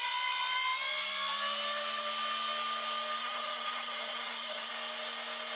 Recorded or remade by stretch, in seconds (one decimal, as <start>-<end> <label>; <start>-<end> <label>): 0.0-3.2 recorded; 3.2-4.7 remade; 4.7-5.6 recorded